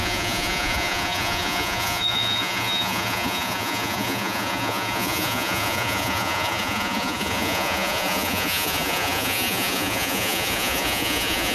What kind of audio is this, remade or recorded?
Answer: remade